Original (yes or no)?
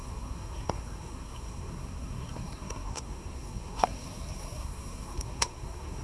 no